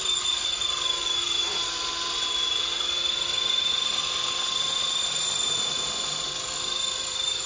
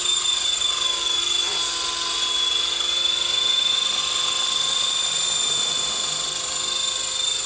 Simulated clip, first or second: first